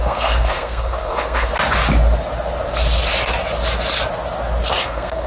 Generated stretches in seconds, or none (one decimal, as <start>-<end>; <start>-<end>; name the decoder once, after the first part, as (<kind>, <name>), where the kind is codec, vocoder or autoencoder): 0.0-1.5 (codec, SNAC); 4.7-5.3

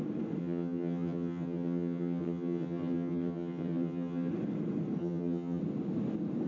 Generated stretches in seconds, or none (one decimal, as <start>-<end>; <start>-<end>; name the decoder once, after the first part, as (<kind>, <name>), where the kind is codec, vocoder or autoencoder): 0.4-4.3 (vocoder, HiFi-GAN); 5.0-5.6

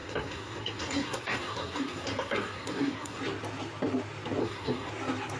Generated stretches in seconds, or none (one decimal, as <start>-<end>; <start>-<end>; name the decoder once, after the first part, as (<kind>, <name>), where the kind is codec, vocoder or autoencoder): 0.0-3.2 (codec, SNAC); 4.4-4.9

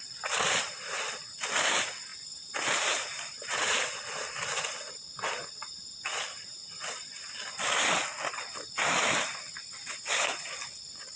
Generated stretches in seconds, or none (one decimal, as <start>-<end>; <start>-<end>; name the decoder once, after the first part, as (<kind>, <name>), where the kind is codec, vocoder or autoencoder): 2.1-3.6 (vocoder, BigVGAN v2)

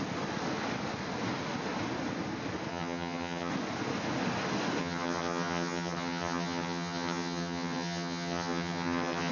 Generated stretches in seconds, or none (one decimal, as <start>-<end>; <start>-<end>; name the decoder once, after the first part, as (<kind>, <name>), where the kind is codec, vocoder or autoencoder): 2.7-3.5 (vocoder, HiFi-GAN); 4.8-9.3

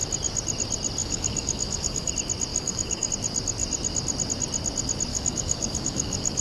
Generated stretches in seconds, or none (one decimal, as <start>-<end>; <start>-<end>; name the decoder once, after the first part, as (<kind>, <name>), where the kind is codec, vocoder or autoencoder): 1.0-2.1 (codec, DAC); 2.5-3.1; 5.1-6.4

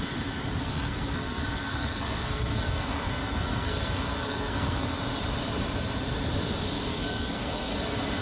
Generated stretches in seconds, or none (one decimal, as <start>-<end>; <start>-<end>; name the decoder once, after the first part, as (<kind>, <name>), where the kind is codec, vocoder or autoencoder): 0.6-5.0 (codec, SNAC); 6.9-7.7